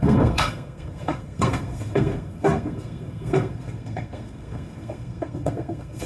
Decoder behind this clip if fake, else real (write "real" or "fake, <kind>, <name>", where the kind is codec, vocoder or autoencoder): fake, codec, SNAC